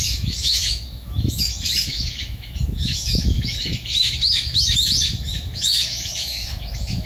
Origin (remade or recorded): remade